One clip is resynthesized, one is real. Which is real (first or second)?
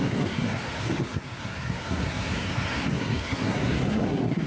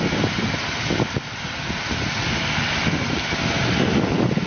second